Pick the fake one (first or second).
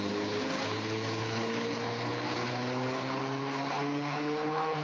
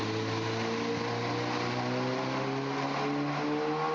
first